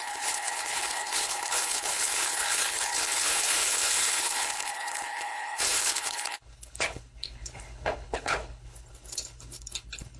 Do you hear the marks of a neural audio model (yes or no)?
yes